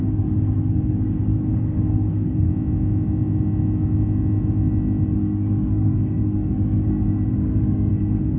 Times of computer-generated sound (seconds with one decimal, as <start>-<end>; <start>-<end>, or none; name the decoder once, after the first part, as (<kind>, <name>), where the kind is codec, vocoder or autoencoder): 0.0-2.5 (codec, SNAC); 5.1-8.4